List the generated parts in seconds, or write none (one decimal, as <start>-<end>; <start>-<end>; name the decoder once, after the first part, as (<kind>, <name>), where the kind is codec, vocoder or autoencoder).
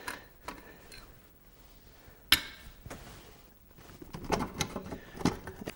4.8-5.3 (vocoder, BigVGAN v2)